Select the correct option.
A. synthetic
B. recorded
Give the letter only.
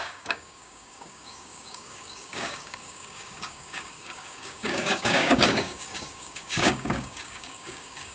A